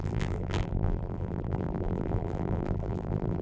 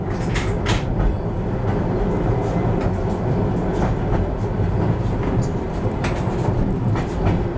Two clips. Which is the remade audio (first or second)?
first